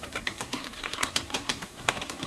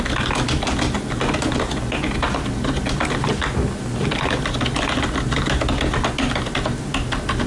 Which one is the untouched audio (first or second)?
second